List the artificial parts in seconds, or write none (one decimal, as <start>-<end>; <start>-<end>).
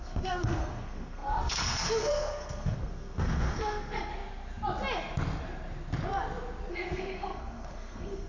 0.0-4.1; 6.7-8.3